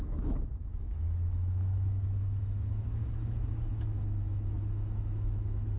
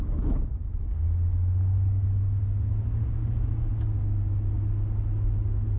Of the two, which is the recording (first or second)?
second